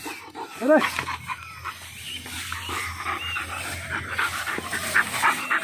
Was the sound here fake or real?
real